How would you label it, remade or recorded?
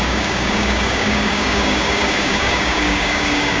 remade